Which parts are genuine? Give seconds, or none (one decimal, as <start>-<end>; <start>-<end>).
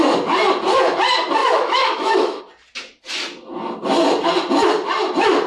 0.0-1.4; 2.4-5.5